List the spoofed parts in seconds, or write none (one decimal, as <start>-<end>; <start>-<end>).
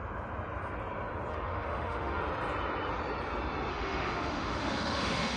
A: 1.3-2.2; 3.7-5.4